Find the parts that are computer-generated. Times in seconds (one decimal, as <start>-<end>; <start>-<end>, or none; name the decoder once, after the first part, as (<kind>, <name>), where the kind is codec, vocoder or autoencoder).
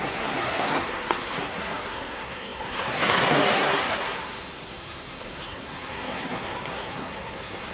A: 0.0-7.7 (codec, SNAC)